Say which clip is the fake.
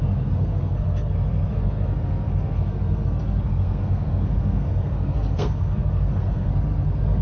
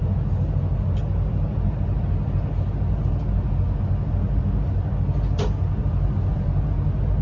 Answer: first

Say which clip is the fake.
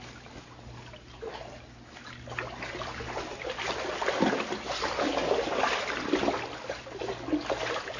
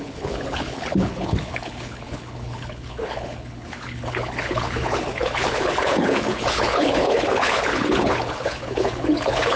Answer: second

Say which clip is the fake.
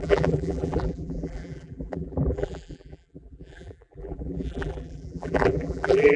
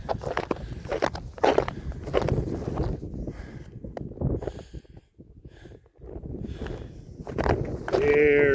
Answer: first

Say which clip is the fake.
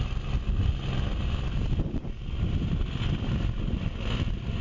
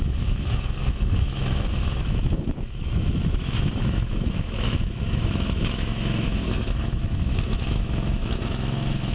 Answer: second